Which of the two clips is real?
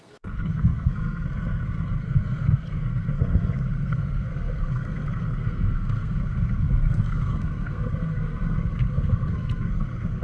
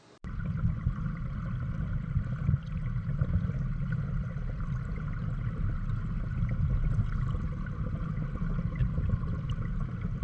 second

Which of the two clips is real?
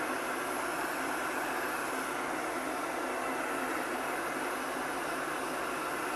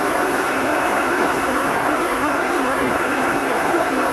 first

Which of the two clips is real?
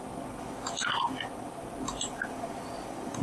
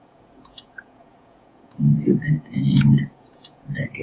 first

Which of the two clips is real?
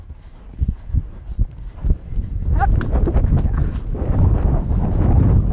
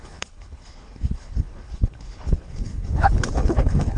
first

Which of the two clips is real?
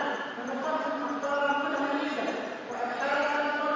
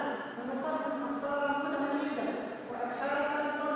second